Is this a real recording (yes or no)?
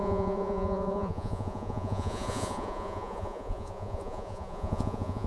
no